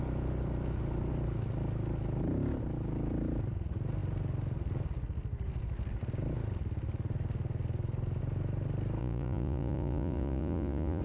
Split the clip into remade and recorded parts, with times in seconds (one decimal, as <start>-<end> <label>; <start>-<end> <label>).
0.0-9.0 recorded; 9.0-11.0 remade